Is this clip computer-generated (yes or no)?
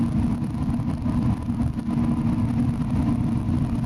no